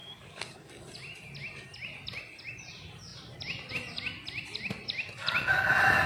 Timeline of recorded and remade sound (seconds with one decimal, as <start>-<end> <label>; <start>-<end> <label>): 0.0-0.7 remade; 0.7-6.1 recorded